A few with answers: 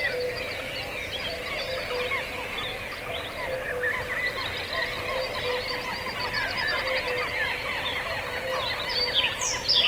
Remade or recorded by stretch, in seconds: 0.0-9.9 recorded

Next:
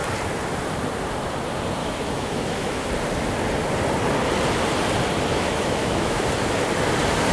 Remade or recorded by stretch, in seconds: 0.0-1.8 recorded; 1.8-2.9 remade; 2.9-5.3 recorded; 5.3-6.2 remade; 6.2-7.3 recorded

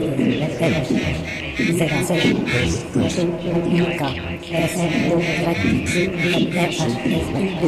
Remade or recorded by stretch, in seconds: 0.0-5.7 recorded; 5.7-7.1 remade; 7.1-7.7 recorded